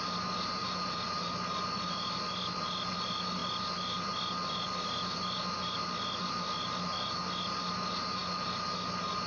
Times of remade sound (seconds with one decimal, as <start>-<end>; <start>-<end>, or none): 0.6-1.3